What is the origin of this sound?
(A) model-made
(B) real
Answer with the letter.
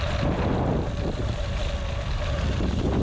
B